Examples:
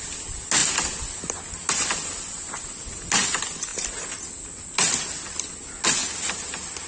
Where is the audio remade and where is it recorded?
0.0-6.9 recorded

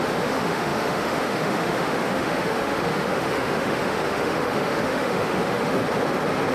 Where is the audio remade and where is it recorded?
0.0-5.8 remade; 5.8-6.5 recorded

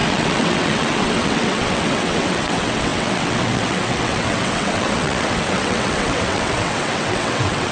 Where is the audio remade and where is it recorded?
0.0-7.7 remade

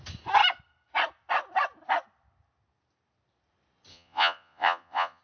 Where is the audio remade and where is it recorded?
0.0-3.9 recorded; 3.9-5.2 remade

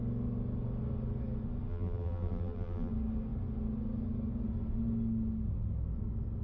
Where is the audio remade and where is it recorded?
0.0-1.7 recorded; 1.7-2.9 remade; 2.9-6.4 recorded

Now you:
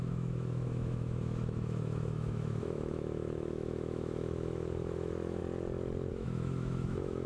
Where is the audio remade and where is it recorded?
0.0-5.4 remade; 5.4-6.1 recorded; 6.1-7.3 remade

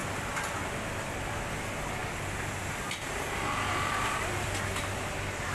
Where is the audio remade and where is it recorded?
0.0-5.5 recorded